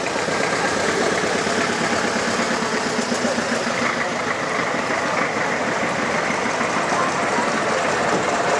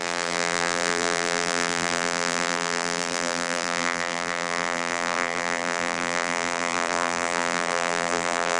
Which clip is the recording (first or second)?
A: first